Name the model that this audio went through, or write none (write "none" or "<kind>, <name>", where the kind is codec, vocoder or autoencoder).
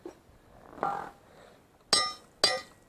none